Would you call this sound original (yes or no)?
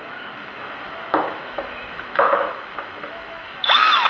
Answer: no